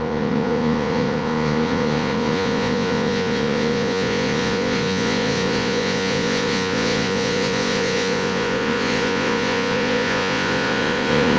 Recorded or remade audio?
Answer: remade